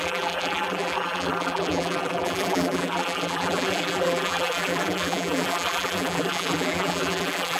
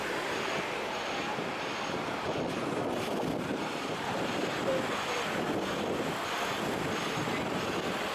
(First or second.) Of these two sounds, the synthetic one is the first